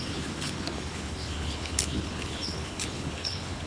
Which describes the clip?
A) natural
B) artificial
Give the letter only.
B